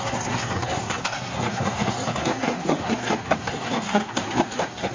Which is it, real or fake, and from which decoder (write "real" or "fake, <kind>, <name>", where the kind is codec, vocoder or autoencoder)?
fake, codec, SNAC